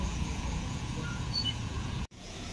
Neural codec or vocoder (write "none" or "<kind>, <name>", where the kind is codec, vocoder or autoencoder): vocoder, Vocos